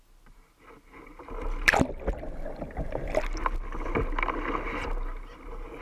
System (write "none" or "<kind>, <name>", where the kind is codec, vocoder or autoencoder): none